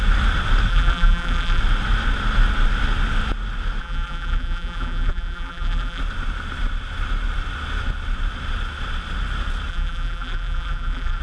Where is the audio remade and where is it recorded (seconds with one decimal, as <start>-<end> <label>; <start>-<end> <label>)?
0.0-0.7 recorded; 0.7-1.6 remade; 1.6-3.8 recorded; 3.8-6.0 remade; 6.0-9.7 recorded; 9.7-11.2 remade